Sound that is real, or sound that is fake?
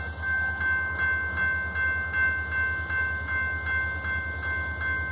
real